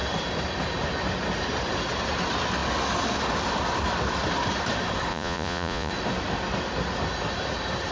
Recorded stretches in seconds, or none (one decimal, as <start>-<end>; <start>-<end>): 0.0-5.1; 5.9-7.9